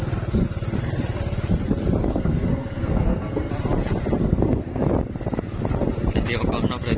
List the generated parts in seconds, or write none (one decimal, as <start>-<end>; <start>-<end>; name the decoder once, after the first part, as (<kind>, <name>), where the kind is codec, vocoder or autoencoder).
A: 2.0-3.5 (codec, SNAC); 4.2-4.8